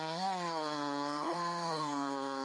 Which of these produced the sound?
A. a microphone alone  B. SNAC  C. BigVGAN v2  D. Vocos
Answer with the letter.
B